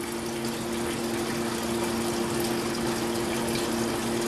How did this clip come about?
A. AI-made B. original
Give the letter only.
B